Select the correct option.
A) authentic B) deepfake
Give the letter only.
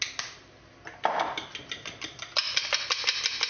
A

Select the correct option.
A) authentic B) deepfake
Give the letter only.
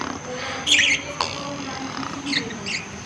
A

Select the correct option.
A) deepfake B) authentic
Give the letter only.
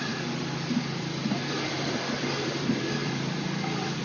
A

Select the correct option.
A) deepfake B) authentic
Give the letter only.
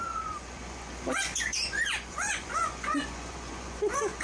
A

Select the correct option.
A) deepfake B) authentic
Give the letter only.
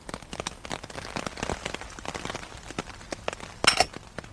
B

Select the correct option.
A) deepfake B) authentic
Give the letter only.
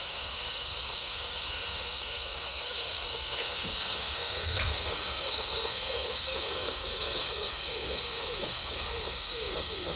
A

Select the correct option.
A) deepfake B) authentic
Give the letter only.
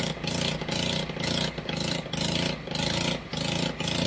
B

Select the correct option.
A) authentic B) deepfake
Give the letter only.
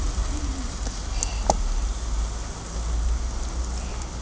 A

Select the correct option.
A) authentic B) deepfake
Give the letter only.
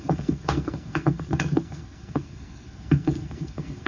B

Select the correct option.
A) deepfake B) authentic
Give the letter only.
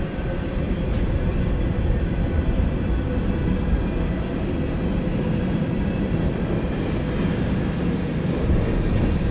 B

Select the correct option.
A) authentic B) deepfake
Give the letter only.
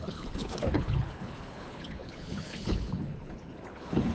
B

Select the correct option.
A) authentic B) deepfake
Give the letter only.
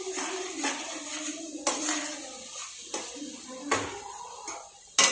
A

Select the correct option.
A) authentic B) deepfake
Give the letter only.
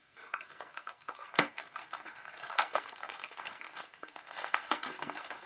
B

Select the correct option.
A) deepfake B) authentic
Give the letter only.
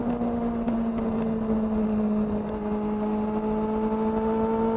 B